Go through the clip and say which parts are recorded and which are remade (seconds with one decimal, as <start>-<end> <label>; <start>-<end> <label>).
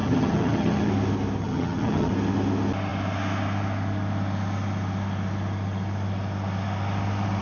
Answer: 0.0-0.9 remade; 0.9-1.4 recorded; 1.4-2.1 remade; 2.1-7.4 recorded